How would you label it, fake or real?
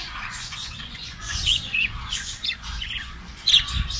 fake